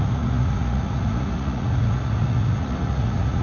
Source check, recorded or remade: remade